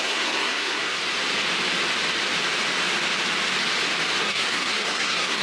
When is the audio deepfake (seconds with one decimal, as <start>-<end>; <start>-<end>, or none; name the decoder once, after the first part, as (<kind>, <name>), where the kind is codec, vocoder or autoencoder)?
0.0-1.0 (codec, SNAC); 4.2-5.4

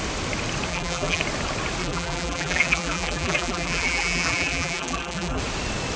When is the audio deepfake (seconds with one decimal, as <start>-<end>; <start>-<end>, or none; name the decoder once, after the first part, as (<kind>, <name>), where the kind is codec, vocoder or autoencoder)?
0.7-1.2 (vocoder, BigVGAN v2); 1.8-5.4

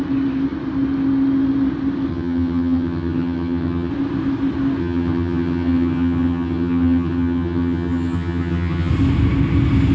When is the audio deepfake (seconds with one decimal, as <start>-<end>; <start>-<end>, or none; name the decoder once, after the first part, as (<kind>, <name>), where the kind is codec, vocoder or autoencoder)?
2.1-3.9 (vocoder, HiFi-GAN); 4.8-8.9

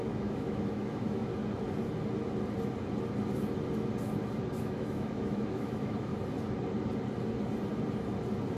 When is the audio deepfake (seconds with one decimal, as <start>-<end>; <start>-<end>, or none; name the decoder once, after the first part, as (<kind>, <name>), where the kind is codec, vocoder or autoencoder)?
0.0-1.3 (autoencoder, DAC-VAE); 4.6-6.1

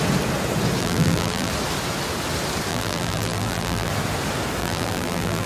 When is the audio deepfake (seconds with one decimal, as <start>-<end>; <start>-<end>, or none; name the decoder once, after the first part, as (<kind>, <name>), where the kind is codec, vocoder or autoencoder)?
0.8-1.5 (vocoder, BigVGAN v2); 2.7-3.9; 4.6-5.5

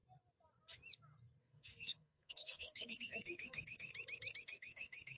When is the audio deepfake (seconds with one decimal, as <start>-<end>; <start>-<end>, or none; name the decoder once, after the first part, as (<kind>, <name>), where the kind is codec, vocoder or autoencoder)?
1.4-3.9 (codec, SNAC); 4.4-5.2

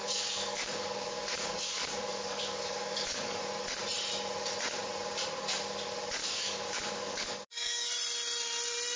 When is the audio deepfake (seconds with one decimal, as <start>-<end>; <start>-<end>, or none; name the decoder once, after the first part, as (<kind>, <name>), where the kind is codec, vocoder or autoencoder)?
0.0-3.4 (codec, DAC); 6.2-7.9